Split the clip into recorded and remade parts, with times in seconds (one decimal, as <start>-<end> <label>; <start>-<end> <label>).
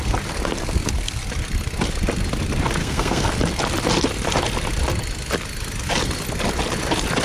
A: 0.0-2.8 recorded; 2.8-3.3 remade; 3.3-7.2 recorded